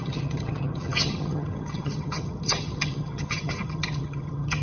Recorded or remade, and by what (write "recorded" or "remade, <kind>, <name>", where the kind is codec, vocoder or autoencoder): remade, vocoder, HiFi-GAN